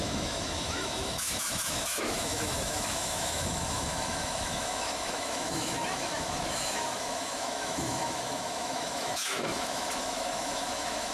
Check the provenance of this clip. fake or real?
fake